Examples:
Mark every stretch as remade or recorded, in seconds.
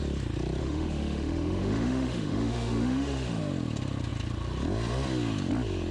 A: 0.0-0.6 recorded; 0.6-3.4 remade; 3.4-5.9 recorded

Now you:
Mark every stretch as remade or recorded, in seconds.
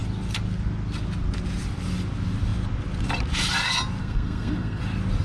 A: 0.0-4.0 recorded; 4.0-4.8 remade; 4.8-5.2 recorded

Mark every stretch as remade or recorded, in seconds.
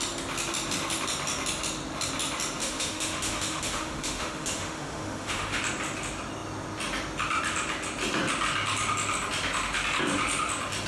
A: 0.0-2.6 recorded; 2.6-5.6 remade; 5.6-10.9 recorded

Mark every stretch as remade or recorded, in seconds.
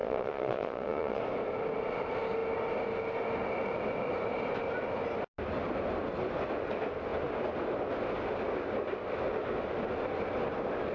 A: 0.0-1.2 remade; 1.2-10.9 recorded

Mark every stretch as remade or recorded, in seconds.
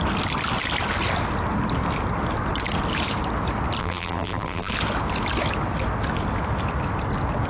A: 0.0-3.8 recorded; 3.8-4.7 remade; 4.7-7.5 recorded